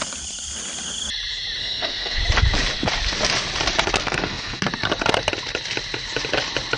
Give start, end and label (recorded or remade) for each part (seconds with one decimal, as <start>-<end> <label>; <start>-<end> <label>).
0.0-1.6 recorded; 1.6-2.2 remade; 2.2-4.0 recorded; 4.0-4.6 remade; 4.6-6.8 recorded